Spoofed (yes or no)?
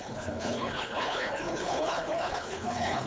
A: yes